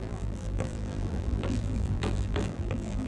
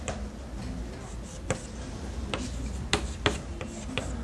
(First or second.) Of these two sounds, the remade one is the first